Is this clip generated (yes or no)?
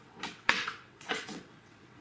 yes